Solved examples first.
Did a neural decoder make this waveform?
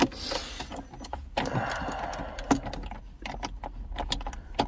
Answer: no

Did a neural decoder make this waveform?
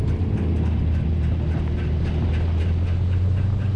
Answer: no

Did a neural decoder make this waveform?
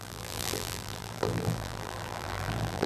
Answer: yes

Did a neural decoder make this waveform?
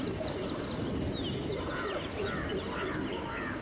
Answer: no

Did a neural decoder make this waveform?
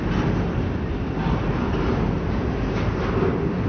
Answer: no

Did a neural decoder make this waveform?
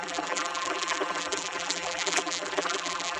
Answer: yes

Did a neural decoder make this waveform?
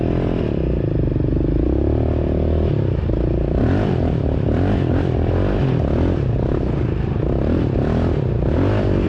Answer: no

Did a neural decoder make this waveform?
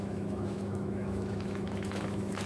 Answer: yes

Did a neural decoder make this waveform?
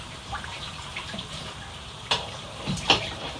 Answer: yes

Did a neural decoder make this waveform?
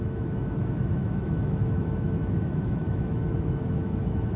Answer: yes